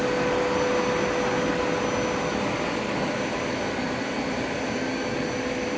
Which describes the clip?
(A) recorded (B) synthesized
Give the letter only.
A